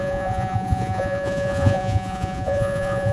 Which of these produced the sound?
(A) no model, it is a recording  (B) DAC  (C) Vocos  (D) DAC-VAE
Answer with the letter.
C